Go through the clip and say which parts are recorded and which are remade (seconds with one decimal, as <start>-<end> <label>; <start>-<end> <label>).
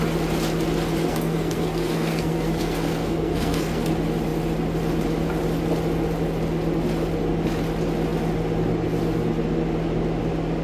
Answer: 0.0-1.0 recorded; 1.0-3.9 remade; 3.9-10.6 recorded